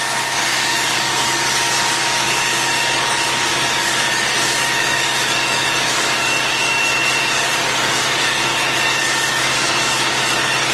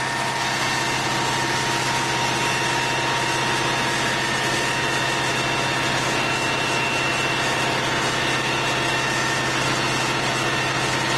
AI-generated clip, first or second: first